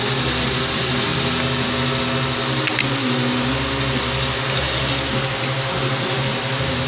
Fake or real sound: real